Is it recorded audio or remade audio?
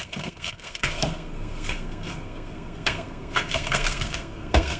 remade